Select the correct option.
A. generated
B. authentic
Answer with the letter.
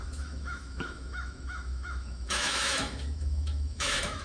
A